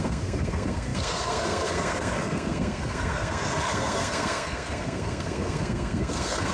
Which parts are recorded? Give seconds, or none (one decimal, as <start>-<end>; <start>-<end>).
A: none

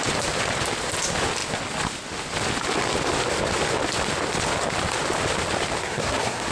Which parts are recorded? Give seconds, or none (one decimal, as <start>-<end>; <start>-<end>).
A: 0.0-5.8

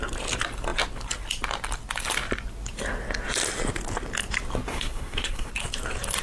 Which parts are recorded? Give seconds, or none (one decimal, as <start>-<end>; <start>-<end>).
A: 0.0-4.7; 5.5-6.2

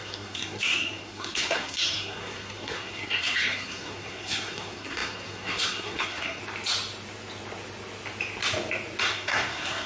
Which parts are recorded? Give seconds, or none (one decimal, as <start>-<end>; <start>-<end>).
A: 6.4-9.0

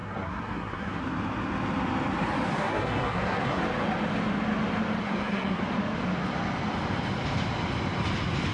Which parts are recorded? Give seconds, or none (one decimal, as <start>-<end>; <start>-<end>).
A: 1.0-2.5; 3.6-5.0; 5.6-8.5

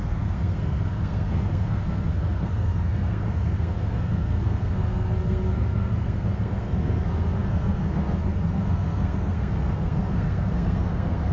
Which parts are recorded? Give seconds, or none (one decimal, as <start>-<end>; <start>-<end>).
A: none

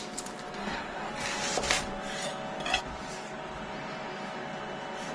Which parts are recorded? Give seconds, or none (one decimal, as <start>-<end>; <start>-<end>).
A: 0.0-0.6; 1.1-5.1

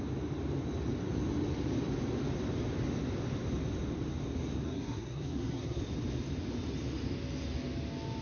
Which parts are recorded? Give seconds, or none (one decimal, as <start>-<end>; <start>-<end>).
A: 0.0-4.6; 5.8-8.2